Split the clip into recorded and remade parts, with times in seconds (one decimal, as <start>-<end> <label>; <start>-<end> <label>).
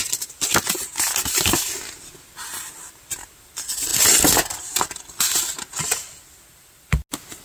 0.0-7.4 recorded